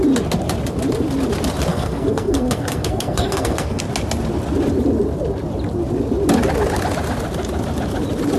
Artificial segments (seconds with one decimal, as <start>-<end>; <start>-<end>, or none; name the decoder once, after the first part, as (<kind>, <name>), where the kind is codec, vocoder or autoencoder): 1.7-3.8 (codec, SNAC)